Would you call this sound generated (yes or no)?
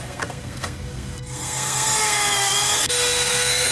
yes